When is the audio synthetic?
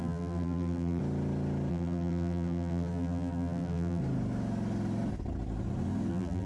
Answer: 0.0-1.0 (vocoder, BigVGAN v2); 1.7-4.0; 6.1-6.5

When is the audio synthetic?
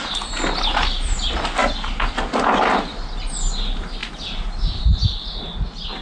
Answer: none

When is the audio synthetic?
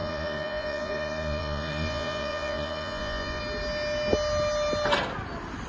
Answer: 0.0-3.4 (vocoder, Vocos)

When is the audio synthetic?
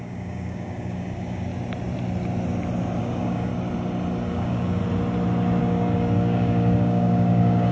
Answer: 0.0-1.5 (codec, DAC); 3.0-3.5; 4.3-4.8; 5.6-7.7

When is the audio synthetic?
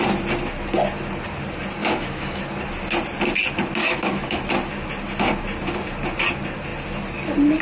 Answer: 1.8-2.4 (autoencoder, DAC-VAE); 3.8-4.4